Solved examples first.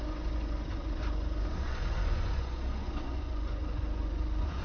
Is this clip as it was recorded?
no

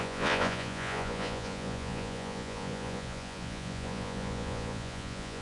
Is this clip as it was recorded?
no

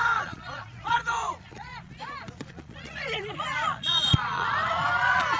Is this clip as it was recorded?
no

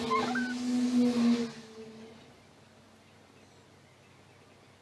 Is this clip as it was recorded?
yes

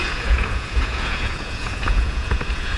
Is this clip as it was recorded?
no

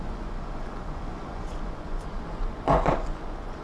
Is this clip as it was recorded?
no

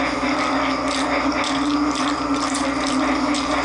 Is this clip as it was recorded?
yes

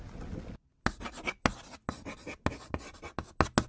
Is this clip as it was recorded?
yes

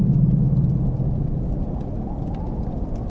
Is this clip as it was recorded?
yes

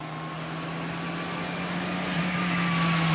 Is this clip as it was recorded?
yes